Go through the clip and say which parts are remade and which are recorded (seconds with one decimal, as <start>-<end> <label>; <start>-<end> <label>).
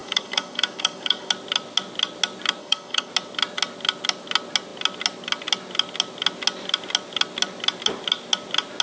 0.0-1.3 remade; 1.3-2.6 recorded; 2.6-3.1 remade; 3.1-8.8 recorded